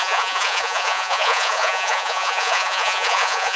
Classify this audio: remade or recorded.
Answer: remade